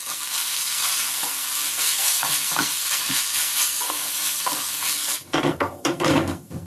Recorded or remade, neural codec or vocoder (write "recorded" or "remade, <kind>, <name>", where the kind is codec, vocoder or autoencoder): remade, codec, SNAC